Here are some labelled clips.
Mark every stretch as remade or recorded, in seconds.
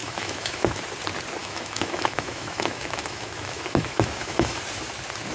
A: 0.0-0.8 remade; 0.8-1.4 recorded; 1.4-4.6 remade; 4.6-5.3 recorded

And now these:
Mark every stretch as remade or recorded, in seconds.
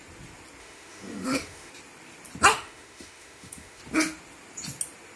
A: 0.0-0.6 recorded; 0.6-1.7 remade; 1.7-2.5 recorded; 2.5-3.8 remade; 3.8-5.2 recorded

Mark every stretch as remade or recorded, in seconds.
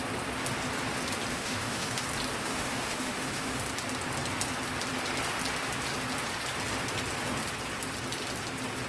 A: 0.0-1.3 recorded; 1.3-2.0 remade; 2.0-2.4 recorded; 2.4-3.6 remade; 3.6-8.9 recorded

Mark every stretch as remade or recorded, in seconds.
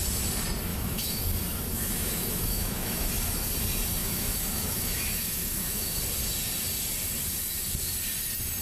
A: 0.0-0.7 recorded; 0.7-1.2 remade; 1.2-1.7 recorded; 1.7-3.1 remade; 3.1-4.0 recorded; 4.0-6.0 remade; 6.0-8.6 recorded